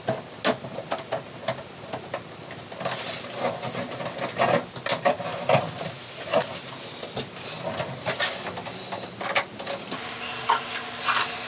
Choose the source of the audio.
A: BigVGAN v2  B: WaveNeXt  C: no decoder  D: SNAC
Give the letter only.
C